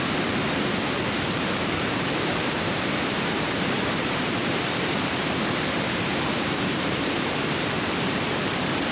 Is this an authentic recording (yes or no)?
no